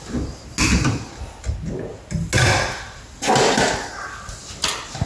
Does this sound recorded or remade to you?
recorded